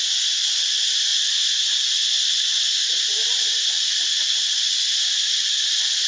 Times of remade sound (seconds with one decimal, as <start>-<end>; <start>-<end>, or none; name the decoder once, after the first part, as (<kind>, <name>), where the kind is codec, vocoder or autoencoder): none